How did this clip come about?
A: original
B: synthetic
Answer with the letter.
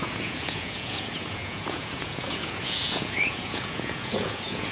B